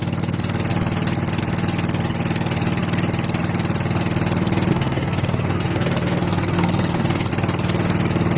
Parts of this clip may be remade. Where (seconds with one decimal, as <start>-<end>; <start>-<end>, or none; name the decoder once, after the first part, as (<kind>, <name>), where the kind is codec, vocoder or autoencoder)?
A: 4.7-7.3 (codec, SNAC)